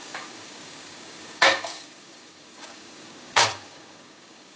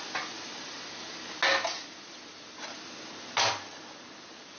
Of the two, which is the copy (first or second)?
first